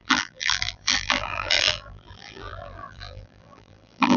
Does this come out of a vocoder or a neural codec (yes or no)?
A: yes